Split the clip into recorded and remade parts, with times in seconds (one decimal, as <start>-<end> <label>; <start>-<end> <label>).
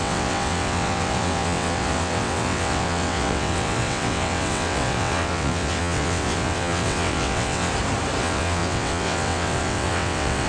0.0-7.7 remade; 7.7-8.2 recorded; 8.2-10.5 remade